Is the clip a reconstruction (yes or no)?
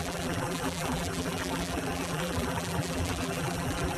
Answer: yes